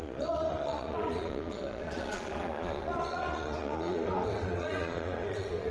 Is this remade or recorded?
remade